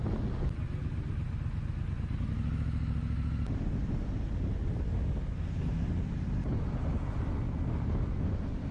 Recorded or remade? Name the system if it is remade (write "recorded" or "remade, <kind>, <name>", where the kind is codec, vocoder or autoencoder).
recorded